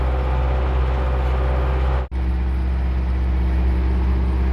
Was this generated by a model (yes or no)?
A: no